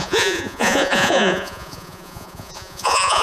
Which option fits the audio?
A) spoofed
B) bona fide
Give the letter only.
A